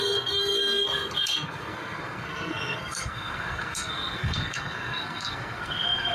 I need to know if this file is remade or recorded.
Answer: remade